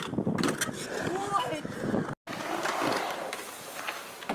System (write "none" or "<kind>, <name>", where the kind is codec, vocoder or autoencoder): none